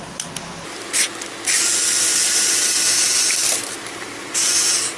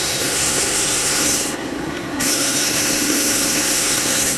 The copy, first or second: second